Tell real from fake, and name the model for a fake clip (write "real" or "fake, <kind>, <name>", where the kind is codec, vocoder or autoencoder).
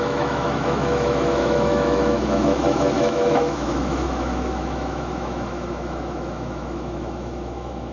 fake, autoencoder, DAC-VAE